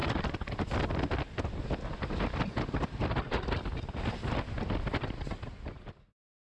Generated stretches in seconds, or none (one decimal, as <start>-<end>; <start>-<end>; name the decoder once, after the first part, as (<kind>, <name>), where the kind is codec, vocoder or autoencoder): none